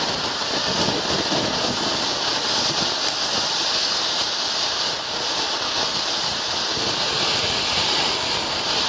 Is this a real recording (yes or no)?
yes